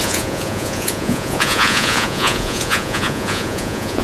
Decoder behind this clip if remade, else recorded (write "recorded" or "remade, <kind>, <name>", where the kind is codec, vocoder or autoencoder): remade, vocoder, Vocos